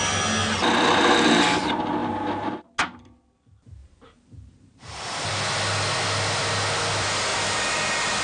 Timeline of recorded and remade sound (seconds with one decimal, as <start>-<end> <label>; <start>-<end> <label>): 0.0-2.0 recorded; 2.0-2.5 remade; 2.5-3.8 recorded; 3.8-5.3 remade; 5.3-7.3 recorded; 7.3-8.2 remade